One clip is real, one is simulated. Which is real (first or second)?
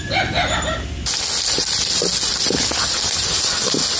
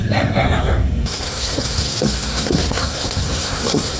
first